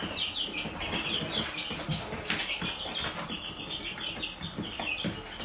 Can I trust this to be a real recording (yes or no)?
yes